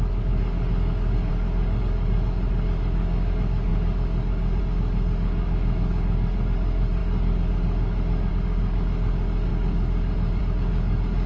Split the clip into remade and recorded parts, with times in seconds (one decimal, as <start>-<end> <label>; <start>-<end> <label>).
0.0-11.3 remade